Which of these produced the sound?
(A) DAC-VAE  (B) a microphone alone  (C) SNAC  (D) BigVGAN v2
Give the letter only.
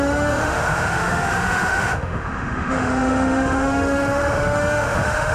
A